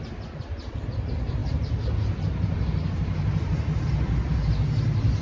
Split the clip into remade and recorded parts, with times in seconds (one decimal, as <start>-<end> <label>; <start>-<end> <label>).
0.0-1.4 recorded; 1.4-4.5 remade; 4.5-5.2 recorded